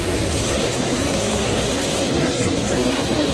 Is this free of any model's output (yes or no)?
no